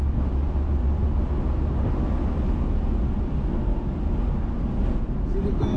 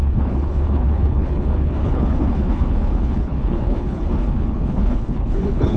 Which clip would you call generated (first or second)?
second